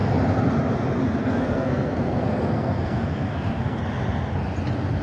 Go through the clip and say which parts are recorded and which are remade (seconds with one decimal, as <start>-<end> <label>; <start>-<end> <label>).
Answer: 0.0-1.2 recorded; 1.2-3.8 remade; 3.8-5.0 recorded